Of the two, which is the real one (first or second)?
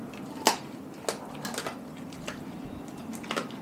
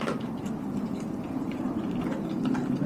first